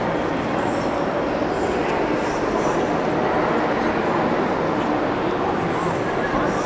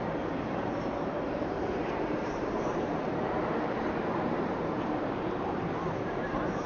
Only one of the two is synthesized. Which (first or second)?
second